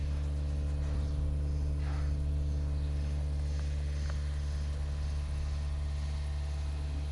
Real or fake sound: real